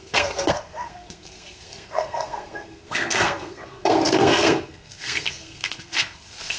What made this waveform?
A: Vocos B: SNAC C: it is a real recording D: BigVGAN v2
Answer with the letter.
B